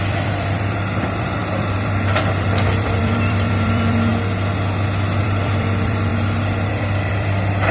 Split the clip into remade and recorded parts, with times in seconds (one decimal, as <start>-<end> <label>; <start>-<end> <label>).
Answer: 0.0-4.1 remade; 4.1-5.2 recorded; 5.2-6.1 remade; 6.1-6.7 recorded; 6.7-7.7 remade